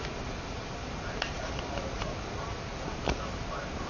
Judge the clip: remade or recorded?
recorded